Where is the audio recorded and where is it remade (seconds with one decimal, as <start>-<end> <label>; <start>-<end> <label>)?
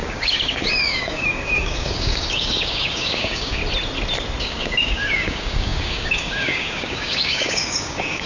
0.0-3.6 remade; 3.6-4.4 recorded; 4.4-8.3 remade